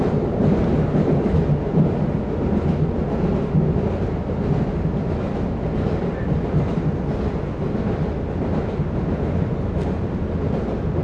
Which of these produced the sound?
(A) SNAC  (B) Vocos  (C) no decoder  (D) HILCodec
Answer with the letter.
C